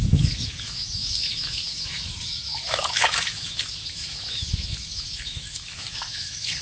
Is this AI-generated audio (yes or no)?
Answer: yes